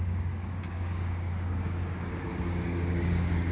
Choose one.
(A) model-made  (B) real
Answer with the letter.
A